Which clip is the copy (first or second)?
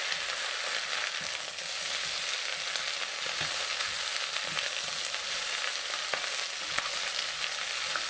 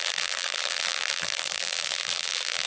second